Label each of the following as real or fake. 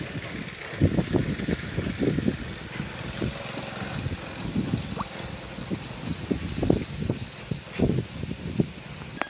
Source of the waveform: real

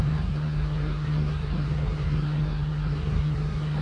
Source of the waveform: fake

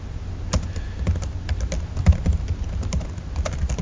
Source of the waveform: real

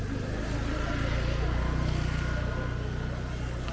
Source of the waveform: real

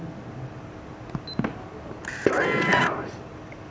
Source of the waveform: real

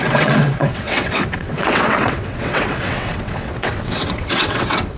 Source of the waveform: fake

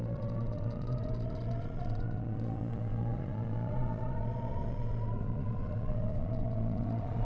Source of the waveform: fake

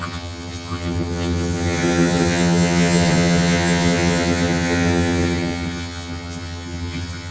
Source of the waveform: fake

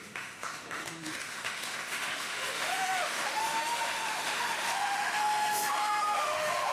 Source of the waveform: fake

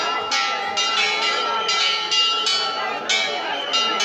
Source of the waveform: real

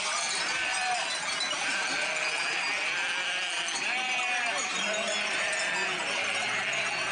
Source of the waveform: fake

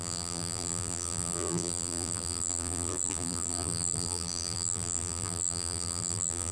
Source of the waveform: fake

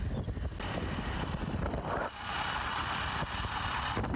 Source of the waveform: real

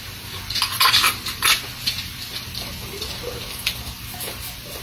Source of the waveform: real